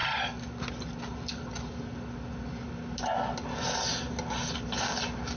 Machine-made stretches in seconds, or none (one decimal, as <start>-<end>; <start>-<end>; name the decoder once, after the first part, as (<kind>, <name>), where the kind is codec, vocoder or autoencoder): none